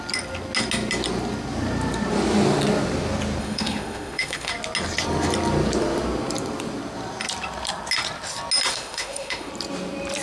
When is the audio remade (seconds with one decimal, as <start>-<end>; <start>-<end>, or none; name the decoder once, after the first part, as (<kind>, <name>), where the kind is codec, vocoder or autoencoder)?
3.4-4.5 (autoencoder, DAC-VAE); 8.7-9.5